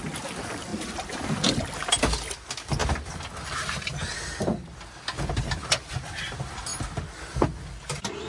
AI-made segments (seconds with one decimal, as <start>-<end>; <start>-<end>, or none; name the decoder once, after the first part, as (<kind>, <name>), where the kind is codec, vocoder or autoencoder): none